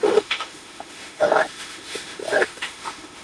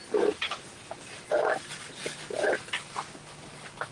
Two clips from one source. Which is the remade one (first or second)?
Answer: first